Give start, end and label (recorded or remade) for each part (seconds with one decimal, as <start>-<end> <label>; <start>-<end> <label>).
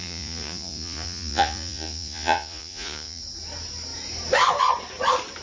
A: 0.0-3.2 remade; 3.2-5.4 recorded